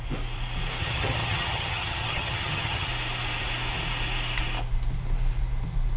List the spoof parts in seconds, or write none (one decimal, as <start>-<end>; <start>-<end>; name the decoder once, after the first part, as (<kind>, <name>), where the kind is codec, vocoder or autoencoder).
0.8-2.9 (vocoder, HiFi-GAN)